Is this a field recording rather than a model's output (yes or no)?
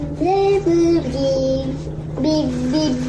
yes